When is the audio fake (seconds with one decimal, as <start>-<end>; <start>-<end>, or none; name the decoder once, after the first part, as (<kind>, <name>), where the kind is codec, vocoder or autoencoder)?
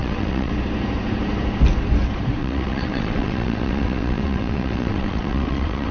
0.0-0.5 (vocoder, WaveNeXt); 2.4-5.9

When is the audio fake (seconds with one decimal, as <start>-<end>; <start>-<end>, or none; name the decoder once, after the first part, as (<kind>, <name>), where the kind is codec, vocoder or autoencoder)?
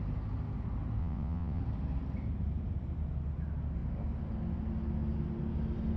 1.0-1.6 (vocoder, WaveNeXt)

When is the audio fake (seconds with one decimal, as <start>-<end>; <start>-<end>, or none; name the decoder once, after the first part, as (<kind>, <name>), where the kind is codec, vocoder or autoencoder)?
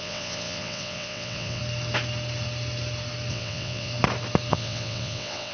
0.0-1.6 (vocoder, WaveNeXt); 3.3-3.9; 4.5-5.5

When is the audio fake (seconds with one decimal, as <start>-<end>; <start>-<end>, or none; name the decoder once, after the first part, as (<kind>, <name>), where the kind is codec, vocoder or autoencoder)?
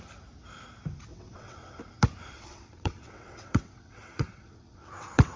1.1-1.8 (vocoder, WaveNeXt); 2.3-5.4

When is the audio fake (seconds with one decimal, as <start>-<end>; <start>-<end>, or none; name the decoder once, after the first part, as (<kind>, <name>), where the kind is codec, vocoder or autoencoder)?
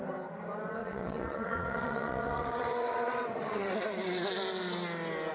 0.8-3.7 (vocoder, WaveNeXt)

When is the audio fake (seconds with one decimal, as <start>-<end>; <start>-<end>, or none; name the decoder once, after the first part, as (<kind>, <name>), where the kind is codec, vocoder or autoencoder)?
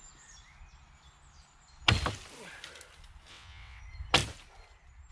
3.3-3.8 (vocoder, WaveNeXt)